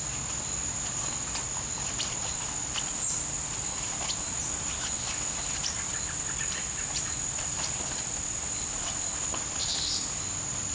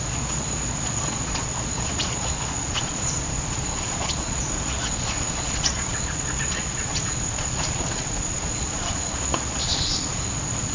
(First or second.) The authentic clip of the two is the first